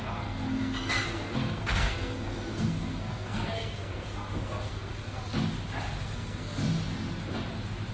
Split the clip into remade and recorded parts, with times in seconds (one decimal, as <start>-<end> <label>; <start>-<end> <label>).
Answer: 0.0-5.2 remade; 5.2-6.0 recorded; 6.0-6.6 remade; 6.6-7.9 recorded